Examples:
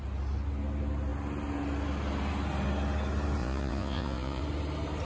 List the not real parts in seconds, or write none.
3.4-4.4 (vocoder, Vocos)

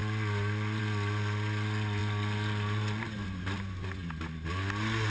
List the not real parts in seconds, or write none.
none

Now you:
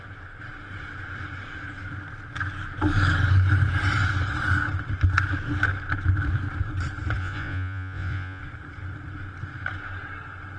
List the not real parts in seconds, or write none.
7.2-8.4 (vocoder, Vocos)